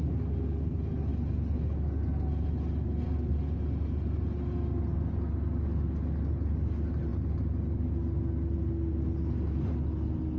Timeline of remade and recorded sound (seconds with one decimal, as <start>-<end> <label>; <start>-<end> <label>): 0.0-10.4 recorded